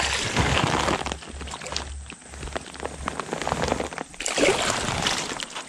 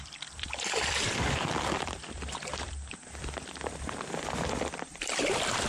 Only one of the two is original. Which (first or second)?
first